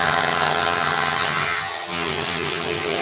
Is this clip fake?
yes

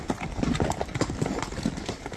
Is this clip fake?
no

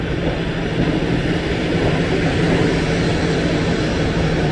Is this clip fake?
no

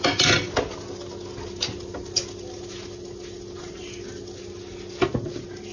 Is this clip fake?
no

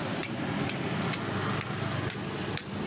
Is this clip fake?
no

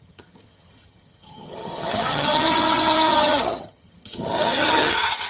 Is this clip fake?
yes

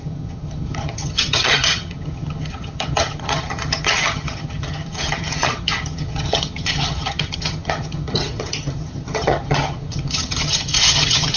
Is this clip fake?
yes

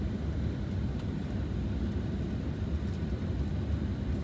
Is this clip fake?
no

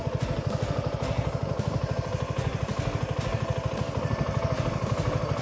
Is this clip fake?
no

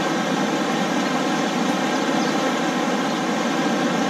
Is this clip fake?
no